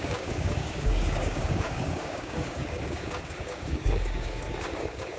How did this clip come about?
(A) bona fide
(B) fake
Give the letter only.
B